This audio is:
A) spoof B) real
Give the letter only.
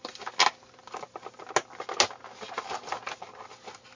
B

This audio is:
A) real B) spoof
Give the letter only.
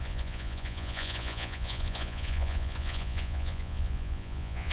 B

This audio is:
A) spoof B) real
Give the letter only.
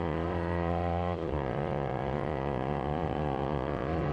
A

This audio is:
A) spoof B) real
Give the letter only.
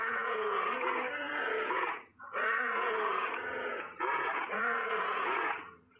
A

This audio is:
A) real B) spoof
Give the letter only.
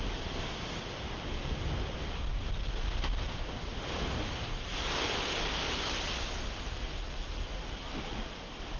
A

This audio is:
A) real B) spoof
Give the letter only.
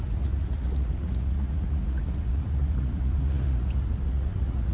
B